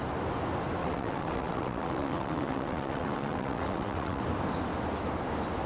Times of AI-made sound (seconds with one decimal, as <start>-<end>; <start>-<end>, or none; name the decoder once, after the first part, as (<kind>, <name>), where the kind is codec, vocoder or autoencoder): 0.8-4.2 (vocoder, WaveNeXt)